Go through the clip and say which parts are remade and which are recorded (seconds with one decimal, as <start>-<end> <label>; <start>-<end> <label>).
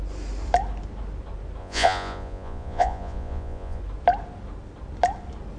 0.0-1.6 recorded; 1.6-3.8 remade; 3.8-5.6 recorded